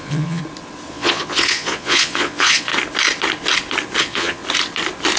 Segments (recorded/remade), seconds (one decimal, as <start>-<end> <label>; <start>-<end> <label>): 0.0-0.4 remade; 0.4-0.9 recorded; 0.9-2.7 remade; 2.7-4.0 recorded; 4.0-4.4 remade; 4.4-5.2 recorded